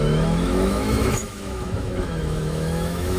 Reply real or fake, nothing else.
fake